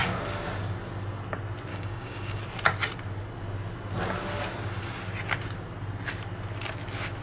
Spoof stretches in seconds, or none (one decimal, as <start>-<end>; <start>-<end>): 1.7-2.4